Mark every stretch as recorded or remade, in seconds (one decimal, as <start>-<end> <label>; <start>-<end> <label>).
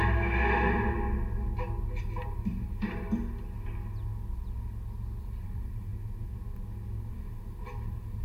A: 0.0-2.0 recorded; 2.0-3.2 remade; 3.2-5.2 recorded; 5.2-5.9 remade; 5.9-7.1 recorded; 7.1-8.2 remade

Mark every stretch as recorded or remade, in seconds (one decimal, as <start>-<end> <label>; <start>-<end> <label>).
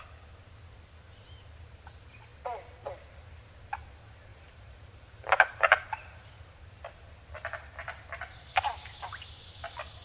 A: 0.0-4.3 recorded; 4.3-6.8 remade; 6.8-10.0 recorded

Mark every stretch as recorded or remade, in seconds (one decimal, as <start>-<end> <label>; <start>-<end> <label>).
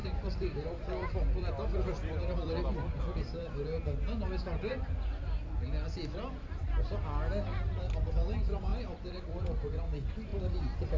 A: 0.0-3.4 remade; 3.4-7.5 recorded; 7.5-8.1 remade; 8.1-8.7 recorded; 8.7-9.6 remade; 9.6-10.3 recorded; 10.3-11.0 remade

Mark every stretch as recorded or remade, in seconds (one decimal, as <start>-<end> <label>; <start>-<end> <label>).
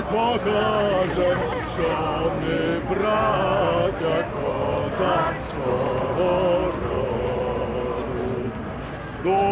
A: 0.0-9.5 recorded